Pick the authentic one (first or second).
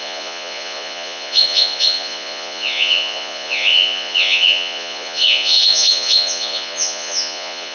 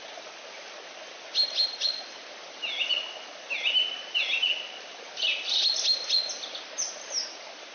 second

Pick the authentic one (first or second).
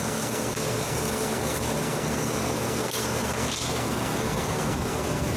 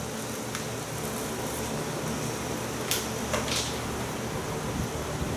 second